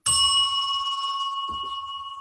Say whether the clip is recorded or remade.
recorded